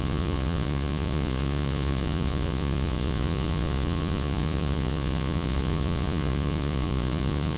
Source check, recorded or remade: remade